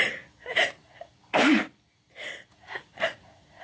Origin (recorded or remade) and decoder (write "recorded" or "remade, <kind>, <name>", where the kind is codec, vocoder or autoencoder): recorded